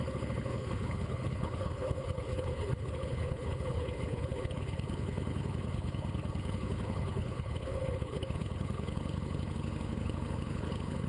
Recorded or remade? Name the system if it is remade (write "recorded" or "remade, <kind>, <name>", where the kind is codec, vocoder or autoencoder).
remade, codec, HILCodec